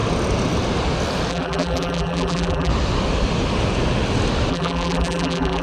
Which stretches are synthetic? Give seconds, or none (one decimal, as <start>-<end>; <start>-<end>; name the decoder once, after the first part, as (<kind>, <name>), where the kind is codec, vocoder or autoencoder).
1.3-2.7 (vocoder, BigVGAN v2); 4.5-5.6